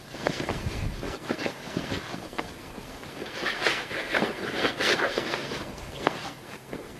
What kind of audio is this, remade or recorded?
remade